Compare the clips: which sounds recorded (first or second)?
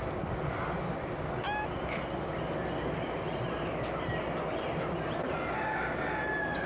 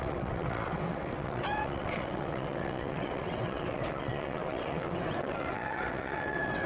first